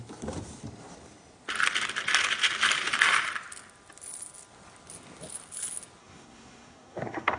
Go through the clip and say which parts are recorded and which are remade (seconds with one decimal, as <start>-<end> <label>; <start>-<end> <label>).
0.0-6.0 recorded; 6.0-7.4 remade